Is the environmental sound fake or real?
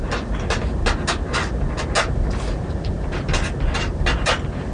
real